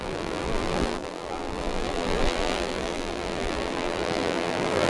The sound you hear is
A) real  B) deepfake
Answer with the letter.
B